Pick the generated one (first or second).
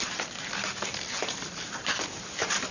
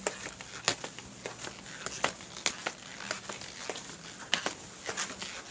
first